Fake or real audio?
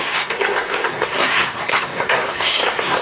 fake